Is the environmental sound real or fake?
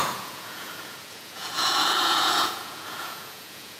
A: fake